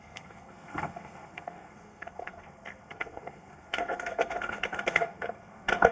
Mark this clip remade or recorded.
remade